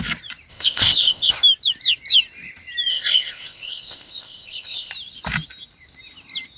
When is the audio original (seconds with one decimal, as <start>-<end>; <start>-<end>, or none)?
0.0-0.5; 1.3-2.9; 4.9-6.6